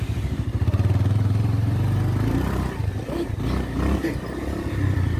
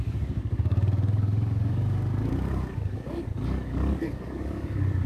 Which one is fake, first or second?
second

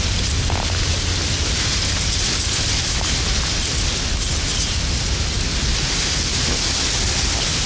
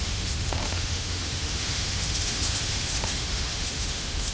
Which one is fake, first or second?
second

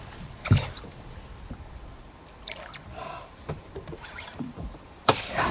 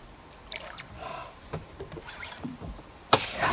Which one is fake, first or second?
first